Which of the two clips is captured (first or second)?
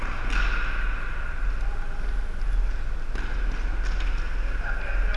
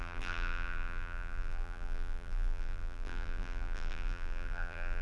first